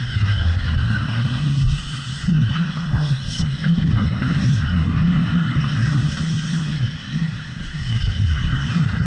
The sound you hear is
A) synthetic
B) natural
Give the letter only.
A